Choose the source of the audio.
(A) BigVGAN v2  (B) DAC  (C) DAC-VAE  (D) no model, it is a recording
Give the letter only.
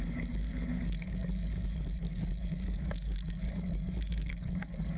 B